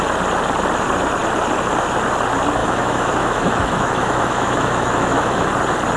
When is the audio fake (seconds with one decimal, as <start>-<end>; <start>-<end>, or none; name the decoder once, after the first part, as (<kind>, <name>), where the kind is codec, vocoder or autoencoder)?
2.6-5.5 (autoencoder, DAC-VAE)